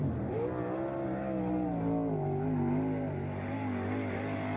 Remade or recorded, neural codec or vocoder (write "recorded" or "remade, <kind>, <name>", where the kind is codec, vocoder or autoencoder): recorded